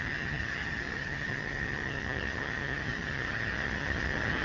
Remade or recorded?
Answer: remade